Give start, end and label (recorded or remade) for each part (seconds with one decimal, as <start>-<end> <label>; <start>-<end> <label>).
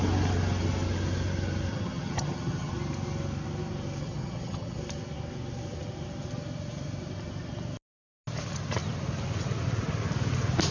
0.0-1.7 recorded; 1.7-2.7 remade; 2.7-4.0 recorded; 4.0-4.8 remade; 4.8-10.7 recorded